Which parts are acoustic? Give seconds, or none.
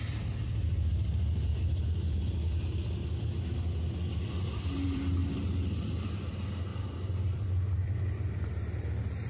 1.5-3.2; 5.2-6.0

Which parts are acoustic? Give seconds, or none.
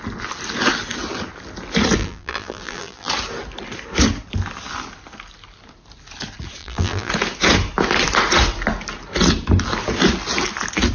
0.0-2.0; 3.1-6.6; 7.1-10.9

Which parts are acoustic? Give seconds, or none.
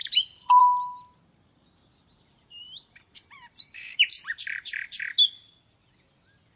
0.6-2.1; 5.0-6.6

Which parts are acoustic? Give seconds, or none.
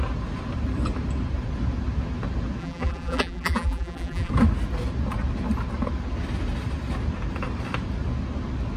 0.0-2.6; 4.3-8.8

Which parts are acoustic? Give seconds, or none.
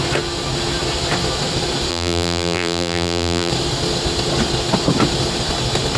0.0-1.9; 3.5-6.0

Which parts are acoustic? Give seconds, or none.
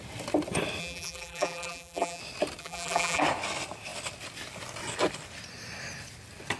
0.0-0.8; 2.2-2.6; 3.2-6.6